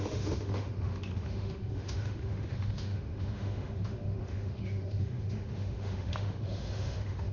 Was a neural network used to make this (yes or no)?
yes